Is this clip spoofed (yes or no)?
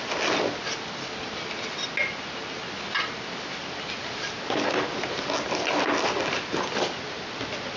no